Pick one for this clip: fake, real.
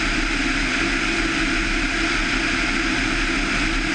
real